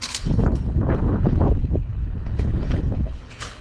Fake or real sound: fake